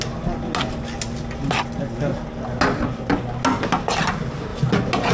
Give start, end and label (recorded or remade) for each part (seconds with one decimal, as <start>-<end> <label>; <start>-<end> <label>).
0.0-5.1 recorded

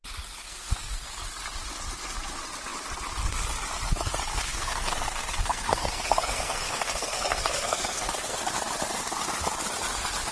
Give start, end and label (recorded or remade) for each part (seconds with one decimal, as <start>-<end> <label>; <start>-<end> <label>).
0.0-0.4 recorded; 0.4-1.2 remade; 1.2-4.3 recorded; 4.3-8.4 remade; 8.4-10.3 recorded

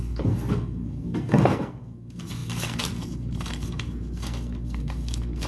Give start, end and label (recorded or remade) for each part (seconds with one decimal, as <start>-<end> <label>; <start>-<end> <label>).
0.0-5.5 remade